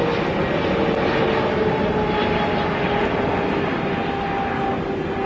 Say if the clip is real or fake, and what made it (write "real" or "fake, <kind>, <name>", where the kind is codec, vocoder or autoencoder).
real